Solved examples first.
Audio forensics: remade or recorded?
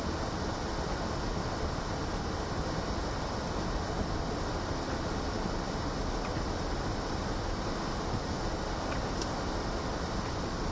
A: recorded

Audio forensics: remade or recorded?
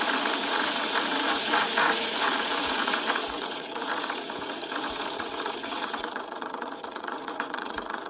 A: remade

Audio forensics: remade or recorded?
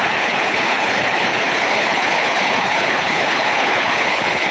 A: remade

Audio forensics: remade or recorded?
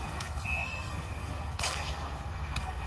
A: remade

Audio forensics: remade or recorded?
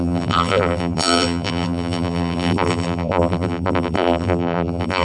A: remade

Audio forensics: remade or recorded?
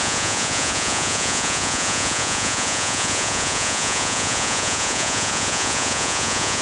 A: remade